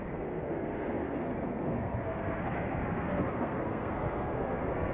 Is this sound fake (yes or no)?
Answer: yes